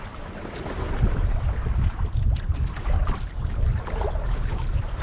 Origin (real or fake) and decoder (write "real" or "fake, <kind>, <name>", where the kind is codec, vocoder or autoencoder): real